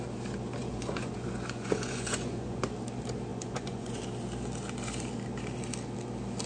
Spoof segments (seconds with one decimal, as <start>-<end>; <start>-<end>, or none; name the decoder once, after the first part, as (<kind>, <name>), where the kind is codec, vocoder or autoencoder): 0.6-2.6 (vocoder, Vocos); 3.3-4.0

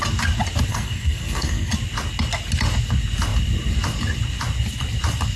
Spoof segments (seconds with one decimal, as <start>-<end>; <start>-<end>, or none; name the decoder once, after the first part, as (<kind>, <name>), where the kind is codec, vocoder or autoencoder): 0.7-1.7 (codec, SNAC)

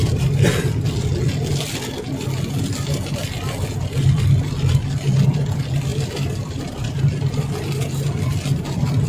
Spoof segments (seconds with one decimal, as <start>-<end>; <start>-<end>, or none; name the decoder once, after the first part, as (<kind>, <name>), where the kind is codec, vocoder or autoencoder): 5.9-6.6 (vocoder, BigVGAN v2)

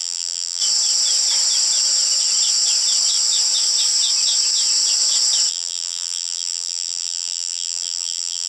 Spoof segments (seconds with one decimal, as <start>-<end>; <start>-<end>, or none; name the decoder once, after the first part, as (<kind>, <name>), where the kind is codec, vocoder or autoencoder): 0.0-0.6 (vocoder, BigVGAN v2); 5.5-8.5